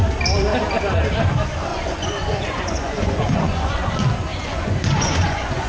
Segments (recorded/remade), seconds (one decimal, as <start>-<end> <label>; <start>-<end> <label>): 0.0-1.7 recorded; 1.7-3.9 remade; 3.9-4.3 recorded; 4.3-5.7 remade